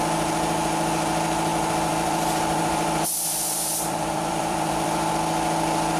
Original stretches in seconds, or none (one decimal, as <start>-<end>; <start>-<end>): 0.0-1.5; 5.1-6.0